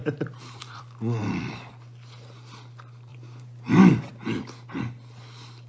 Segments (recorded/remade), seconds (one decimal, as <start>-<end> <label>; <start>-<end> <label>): 0.0-0.8 remade; 0.8-3.1 recorded; 3.1-3.8 remade; 3.8-5.7 recorded